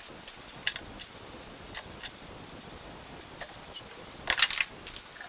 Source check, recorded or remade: recorded